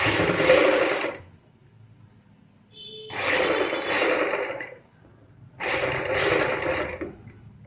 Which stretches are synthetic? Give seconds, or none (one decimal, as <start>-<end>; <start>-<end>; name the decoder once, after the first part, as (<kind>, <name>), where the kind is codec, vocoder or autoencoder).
none